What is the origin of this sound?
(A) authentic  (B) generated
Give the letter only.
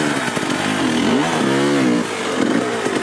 A